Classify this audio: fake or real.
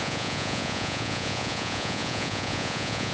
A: fake